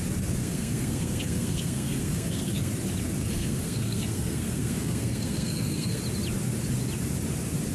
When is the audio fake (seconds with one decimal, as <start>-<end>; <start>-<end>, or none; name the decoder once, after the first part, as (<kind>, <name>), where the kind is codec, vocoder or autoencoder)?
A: 0.4-2.7 (codec, SNAC); 3.2-6.0